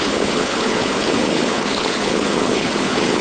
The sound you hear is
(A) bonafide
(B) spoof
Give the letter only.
B